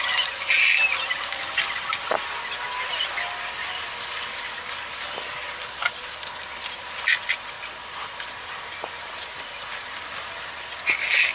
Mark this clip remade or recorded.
recorded